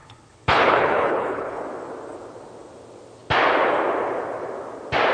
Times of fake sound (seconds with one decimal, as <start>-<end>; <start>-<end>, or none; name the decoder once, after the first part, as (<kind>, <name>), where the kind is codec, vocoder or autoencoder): 0.0-1.6 (codec, HILCodec)